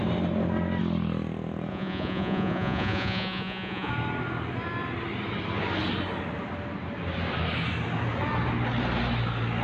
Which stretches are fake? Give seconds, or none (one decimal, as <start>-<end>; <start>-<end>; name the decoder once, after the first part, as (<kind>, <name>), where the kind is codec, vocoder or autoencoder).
1.7-3.9 (vocoder, Vocos)